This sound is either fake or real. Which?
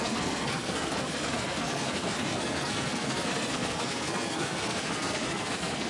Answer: fake